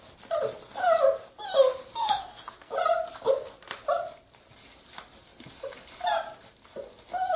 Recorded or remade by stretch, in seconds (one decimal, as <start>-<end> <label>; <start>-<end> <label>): 0.0-2.0 recorded; 2.0-2.7 remade; 2.7-7.4 recorded